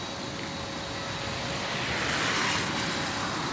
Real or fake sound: real